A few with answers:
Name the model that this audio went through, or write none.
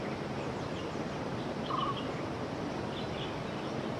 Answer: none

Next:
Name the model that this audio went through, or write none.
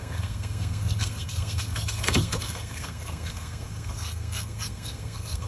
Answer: codec, SNAC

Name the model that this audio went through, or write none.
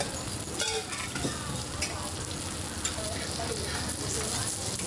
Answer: none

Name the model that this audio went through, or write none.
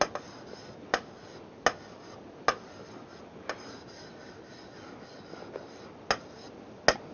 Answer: none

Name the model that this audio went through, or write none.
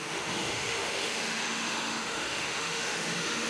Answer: autoencoder, DAC-VAE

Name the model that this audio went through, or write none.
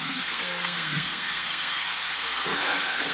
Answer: codec, SNAC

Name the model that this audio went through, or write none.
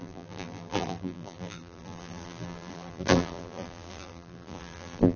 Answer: vocoder, BigVGAN v2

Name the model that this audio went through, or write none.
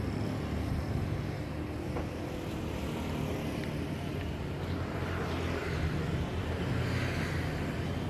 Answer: none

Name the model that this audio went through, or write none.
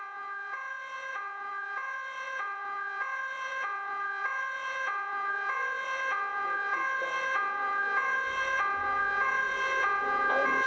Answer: vocoder, Vocos